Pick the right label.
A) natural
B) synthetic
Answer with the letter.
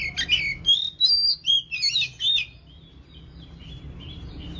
A